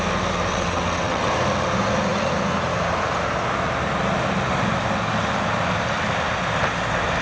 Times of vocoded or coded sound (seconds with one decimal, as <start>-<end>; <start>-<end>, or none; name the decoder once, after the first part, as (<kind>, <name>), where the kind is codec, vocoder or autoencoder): 0.5-1.3 (vocoder, WaveNeXt)